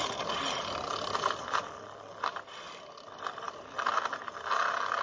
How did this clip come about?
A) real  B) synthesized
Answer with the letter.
A